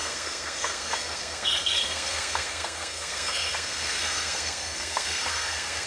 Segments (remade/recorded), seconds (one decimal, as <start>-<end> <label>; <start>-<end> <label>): 0.0-5.9 remade